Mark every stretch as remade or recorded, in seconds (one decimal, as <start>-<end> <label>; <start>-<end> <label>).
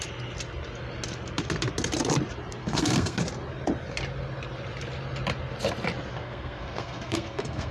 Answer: 0.0-2.6 recorded; 2.6-3.2 remade; 3.2-6.1 recorded; 6.1-7.7 remade